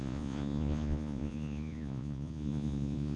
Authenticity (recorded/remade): remade